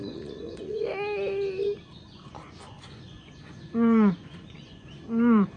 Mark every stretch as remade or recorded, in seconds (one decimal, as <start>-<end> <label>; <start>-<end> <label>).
0.0-0.8 remade; 0.8-2.1 recorded; 2.1-5.0 remade; 5.0-5.6 recorded

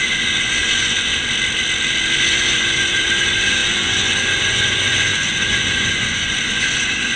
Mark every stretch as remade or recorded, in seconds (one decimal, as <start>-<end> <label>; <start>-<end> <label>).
0.0-1.1 remade; 1.1-2.2 recorded; 2.2-7.2 remade